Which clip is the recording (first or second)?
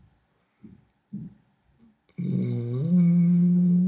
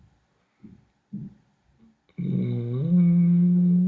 second